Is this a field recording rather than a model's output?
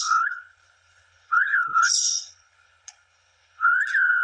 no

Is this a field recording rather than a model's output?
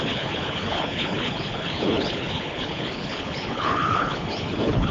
no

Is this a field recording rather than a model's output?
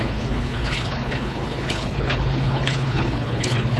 no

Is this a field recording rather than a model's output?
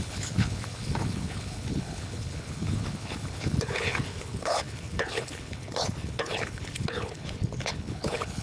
no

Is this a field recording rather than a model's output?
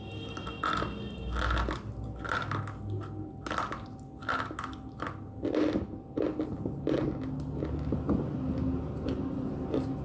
yes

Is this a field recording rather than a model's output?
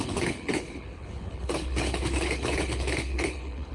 no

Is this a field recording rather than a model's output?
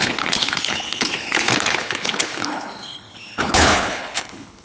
no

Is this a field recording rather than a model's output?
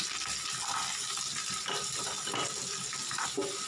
yes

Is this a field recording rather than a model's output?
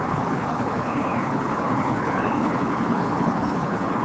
no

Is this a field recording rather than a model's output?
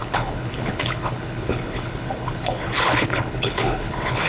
no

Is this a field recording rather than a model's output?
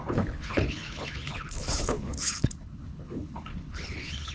no